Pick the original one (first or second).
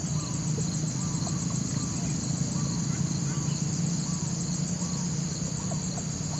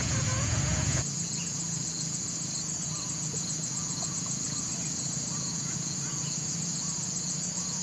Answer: first